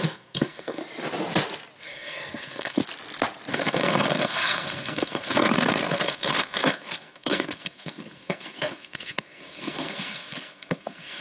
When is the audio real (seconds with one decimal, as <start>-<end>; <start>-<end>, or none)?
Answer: 0.8-1.8; 2.8-3.5